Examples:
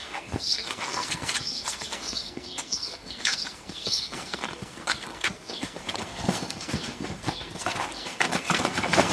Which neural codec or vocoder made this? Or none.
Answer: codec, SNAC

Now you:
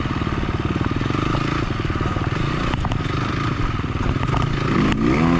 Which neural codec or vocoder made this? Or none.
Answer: none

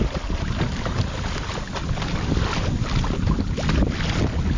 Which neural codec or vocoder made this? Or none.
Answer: none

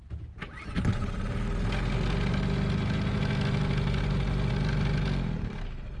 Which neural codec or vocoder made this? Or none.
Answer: none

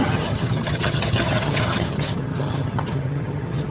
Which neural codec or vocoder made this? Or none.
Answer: vocoder, HiFi-GAN